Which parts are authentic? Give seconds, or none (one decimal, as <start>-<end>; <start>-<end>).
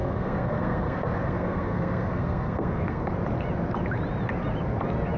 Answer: 3.1-5.2